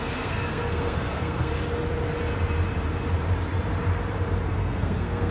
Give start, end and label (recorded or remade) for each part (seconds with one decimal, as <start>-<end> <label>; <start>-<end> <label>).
0.0-1.5 remade; 1.5-4.5 recorded; 4.5-5.3 remade